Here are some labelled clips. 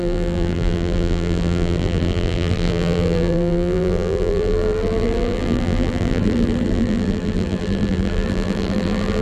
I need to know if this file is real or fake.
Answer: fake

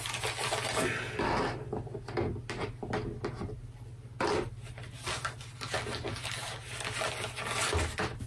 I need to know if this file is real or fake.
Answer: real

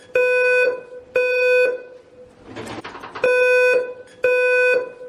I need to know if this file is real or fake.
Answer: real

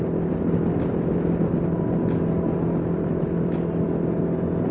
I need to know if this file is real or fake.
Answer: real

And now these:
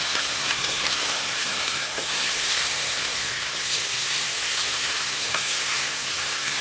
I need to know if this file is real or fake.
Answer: fake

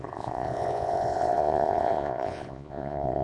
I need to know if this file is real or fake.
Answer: fake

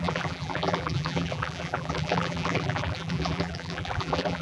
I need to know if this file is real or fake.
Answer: fake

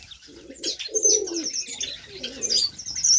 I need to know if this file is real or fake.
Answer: real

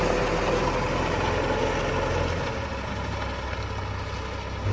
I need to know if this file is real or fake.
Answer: real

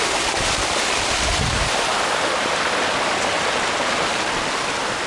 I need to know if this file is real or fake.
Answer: real